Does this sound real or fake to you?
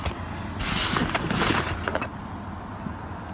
real